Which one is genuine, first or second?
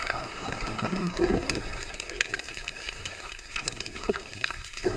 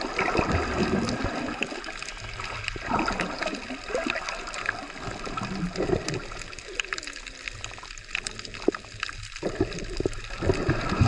second